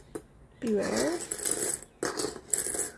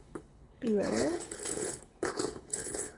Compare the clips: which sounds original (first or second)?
first